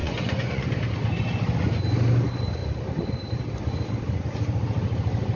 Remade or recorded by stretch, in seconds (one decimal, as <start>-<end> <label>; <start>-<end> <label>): 0.0-0.7 remade; 0.7-5.4 recorded